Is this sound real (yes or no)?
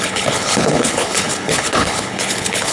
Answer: no